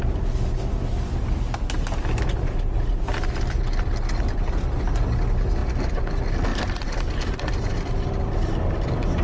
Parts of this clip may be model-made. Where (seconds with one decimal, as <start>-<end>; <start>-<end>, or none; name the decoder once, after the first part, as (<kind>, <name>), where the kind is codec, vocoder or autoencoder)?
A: none